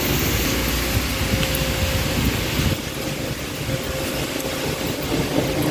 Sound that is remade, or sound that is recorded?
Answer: recorded